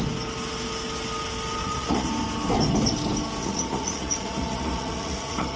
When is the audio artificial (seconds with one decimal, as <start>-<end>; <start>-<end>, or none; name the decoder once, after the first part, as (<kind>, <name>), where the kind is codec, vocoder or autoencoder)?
1.6-2.1 (vocoder, Vocos); 3.4-5.6